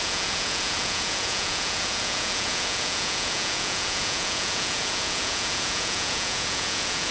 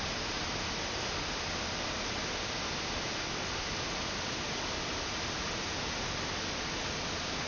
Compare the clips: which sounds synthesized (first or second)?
first